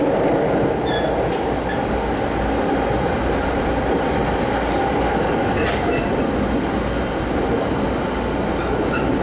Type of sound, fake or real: real